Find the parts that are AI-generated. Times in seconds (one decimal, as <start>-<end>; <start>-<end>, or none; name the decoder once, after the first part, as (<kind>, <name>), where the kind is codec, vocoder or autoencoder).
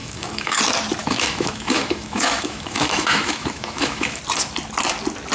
0.0-0.6 (autoencoder, DAC-VAE); 1.0-4.2